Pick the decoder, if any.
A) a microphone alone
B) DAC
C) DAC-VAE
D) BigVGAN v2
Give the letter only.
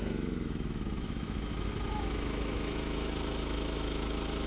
C